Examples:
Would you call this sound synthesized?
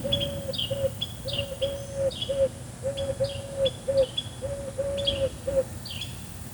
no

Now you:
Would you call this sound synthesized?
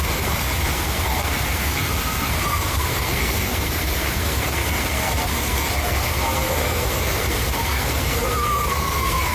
yes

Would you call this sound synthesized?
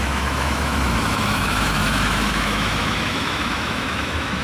yes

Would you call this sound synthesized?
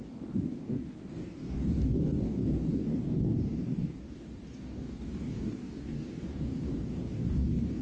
yes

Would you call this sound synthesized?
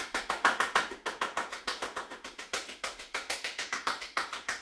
yes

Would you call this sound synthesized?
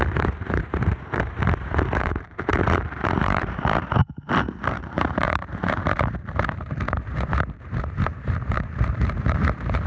yes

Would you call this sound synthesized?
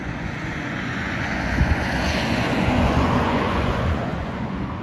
yes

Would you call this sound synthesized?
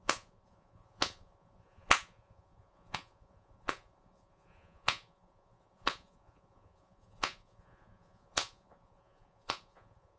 yes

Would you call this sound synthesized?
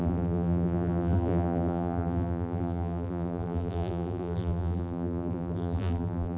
yes